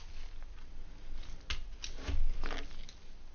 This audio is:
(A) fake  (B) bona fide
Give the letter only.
B